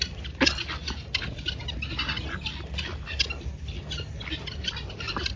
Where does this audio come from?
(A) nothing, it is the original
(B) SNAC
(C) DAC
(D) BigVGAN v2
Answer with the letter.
A